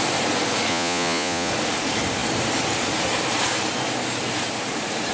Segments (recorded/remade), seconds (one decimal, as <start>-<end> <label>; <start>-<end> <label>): 0.0-0.7 recorded; 0.7-1.5 remade; 1.5-5.1 recorded